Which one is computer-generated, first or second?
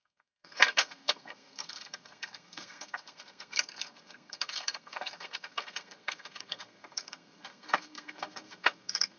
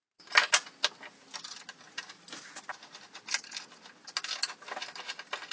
first